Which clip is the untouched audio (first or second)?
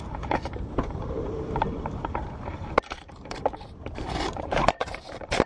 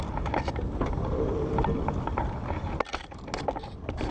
second